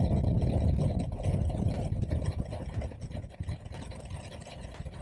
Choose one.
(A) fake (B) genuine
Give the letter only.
B